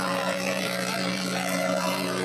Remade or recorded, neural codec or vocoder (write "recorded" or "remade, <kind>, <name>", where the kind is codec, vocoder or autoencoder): remade, vocoder, BigVGAN v2